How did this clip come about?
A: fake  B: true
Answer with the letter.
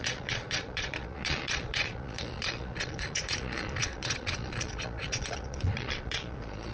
A